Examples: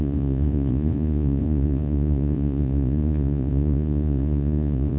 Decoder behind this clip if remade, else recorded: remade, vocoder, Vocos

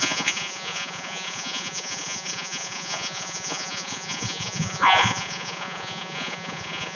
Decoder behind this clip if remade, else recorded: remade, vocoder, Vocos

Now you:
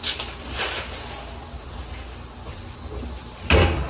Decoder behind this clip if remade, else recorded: recorded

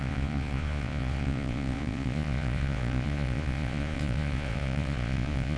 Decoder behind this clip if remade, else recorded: remade, vocoder, Vocos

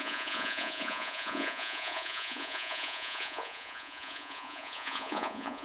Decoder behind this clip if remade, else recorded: remade, vocoder, Vocos